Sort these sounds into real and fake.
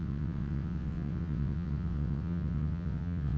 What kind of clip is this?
fake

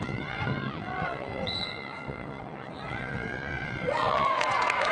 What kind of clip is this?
fake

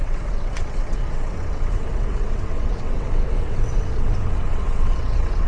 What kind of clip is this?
fake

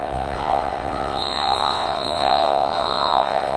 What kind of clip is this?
fake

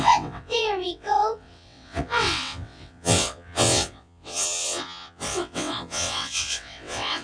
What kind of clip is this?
fake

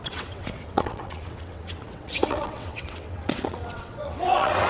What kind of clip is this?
fake